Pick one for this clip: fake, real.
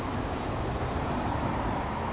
fake